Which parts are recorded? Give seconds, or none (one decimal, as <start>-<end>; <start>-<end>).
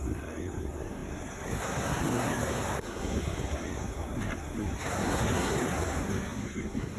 none